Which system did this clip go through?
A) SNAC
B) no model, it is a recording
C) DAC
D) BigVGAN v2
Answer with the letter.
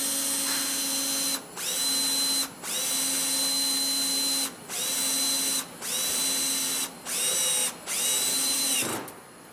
B